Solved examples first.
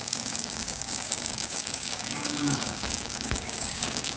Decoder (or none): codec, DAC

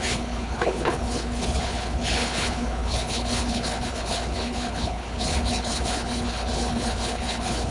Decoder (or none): codec, HILCodec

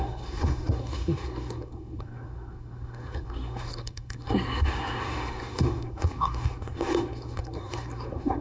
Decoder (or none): codec, SNAC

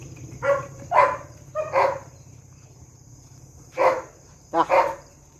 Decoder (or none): vocoder, BigVGAN v2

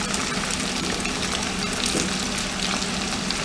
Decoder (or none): none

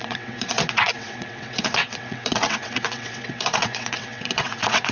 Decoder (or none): vocoder, WaveNeXt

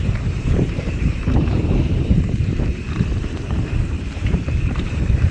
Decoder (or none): vocoder, BigVGAN v2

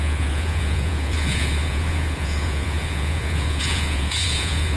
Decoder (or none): vocoder, Vocos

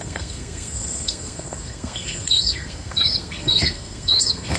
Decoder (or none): codec, SNAC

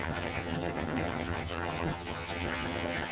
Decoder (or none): vocoder, HiFi-GAN